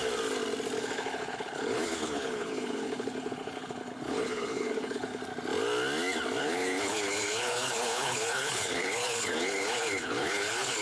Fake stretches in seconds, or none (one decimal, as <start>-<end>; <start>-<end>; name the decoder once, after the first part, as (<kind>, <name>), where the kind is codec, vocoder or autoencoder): 0.8-5.2 (codec, HILCodec); 6.4-10.8

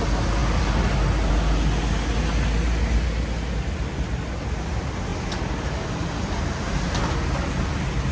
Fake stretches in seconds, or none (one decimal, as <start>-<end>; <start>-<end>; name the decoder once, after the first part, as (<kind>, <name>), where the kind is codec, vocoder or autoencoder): none

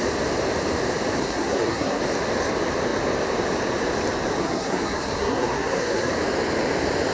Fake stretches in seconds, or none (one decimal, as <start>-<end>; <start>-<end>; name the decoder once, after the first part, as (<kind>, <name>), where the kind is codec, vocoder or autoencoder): 1.2-2.0 (codec, SNAC); 4.4-6.1

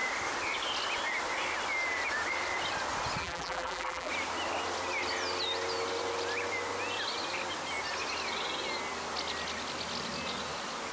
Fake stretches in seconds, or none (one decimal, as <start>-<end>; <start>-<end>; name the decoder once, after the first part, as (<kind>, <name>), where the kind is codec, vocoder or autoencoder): 3.2-4.1 (vocoder, BigVGAN v2)

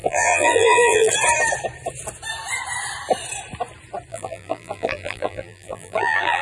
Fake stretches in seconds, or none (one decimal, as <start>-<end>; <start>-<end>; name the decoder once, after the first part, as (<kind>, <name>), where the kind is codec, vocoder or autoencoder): 0.0-1.1 (vocoder, BigVGAN v2); 4.1-6.4